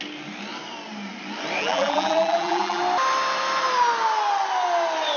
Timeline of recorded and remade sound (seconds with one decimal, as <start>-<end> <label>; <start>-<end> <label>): 0.0-1.6 recorded; 1.6-2.8 remade; 2.8-5.2 recorded